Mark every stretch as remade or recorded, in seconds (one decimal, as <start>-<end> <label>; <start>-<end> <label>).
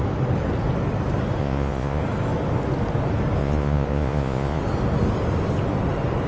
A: 0.0-1.4 recorded; 1.4-2.0 remade; 2.0-3.4 recorded; 3.4-4.6 remade; 4.6-6.3 recorded